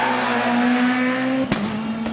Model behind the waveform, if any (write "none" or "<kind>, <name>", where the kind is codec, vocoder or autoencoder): none